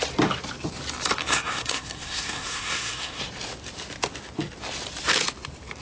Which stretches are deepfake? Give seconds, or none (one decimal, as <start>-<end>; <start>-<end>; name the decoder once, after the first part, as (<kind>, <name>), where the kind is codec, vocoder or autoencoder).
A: 1.2-3.2 (codec, SNAC)